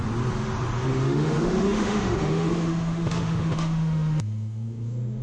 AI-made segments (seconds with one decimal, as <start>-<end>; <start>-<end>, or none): 1.0-5.2